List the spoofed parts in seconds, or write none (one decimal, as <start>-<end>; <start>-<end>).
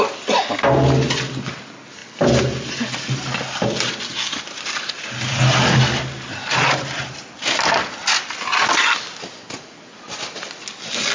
none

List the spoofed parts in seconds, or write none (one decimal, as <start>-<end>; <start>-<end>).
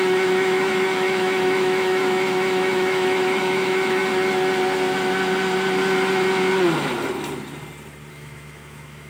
0.0-4.0; 8.1-9.1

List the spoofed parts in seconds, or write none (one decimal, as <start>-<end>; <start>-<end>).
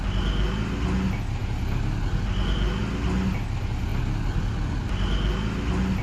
none